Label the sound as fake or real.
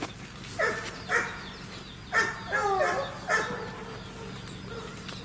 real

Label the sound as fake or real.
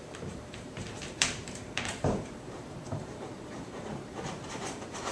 fake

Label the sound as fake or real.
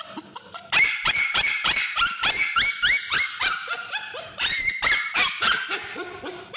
fake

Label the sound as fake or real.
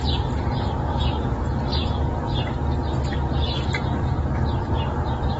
real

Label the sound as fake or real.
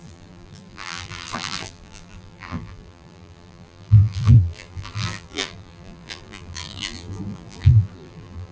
fake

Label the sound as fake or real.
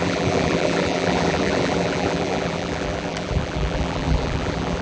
fake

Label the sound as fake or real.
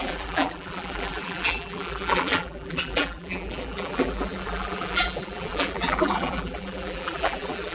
fake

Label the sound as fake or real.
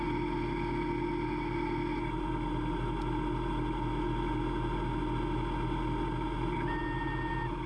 real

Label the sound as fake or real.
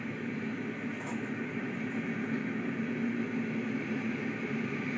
fake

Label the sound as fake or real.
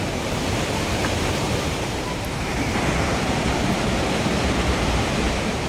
fake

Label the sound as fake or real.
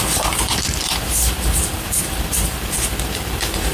fake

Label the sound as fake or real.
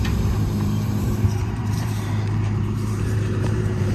fake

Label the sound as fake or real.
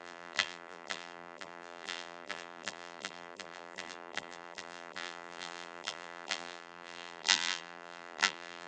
fake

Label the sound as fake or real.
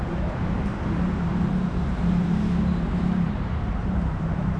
fake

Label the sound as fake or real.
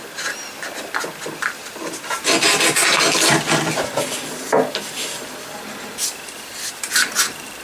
real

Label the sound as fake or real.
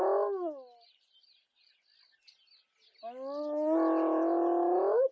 real